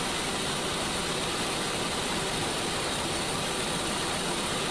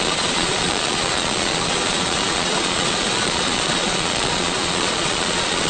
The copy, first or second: second